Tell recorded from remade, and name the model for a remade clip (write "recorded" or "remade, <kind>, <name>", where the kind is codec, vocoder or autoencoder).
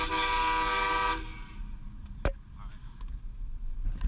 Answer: recorded